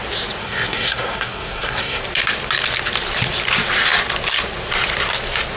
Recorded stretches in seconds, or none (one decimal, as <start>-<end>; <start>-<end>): 0.0-0.4; 2.0-5.6